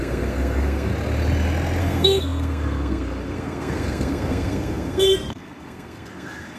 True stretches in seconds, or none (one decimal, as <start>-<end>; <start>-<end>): 0.9-1.8